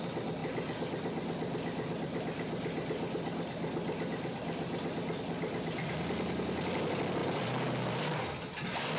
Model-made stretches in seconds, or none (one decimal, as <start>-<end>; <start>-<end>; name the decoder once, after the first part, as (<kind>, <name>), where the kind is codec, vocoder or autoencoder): none